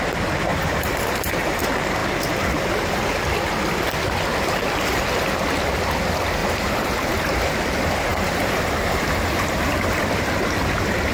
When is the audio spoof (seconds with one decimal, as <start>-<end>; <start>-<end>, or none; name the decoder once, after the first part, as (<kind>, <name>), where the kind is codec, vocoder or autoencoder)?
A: 0.5-1.6 (vocoder, BigVGAN v2); 6.4-7.4; 8.1-10.0